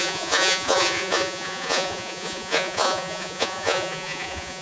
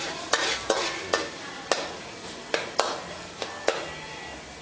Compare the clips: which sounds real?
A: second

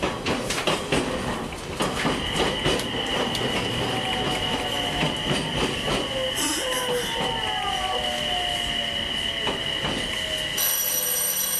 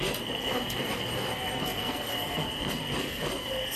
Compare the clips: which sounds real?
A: first